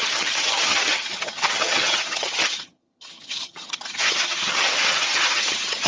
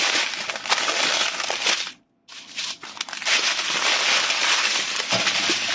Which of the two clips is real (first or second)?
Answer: second